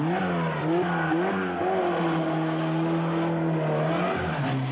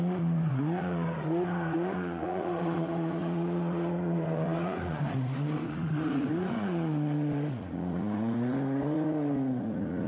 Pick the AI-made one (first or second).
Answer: second